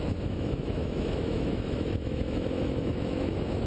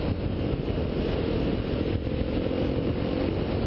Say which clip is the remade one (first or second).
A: first